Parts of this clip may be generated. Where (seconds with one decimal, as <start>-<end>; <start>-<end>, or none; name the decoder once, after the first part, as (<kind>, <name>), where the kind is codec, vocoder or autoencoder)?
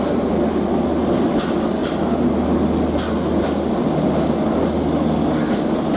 none